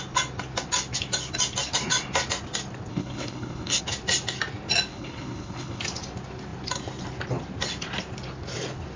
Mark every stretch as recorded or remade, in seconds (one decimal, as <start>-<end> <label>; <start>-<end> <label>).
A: 0.0-2.9 recorded; 2.9-3.8 remade; 3.8-4.9 recorded; 4.9-5.8 remade; 5.8-9.0 recorded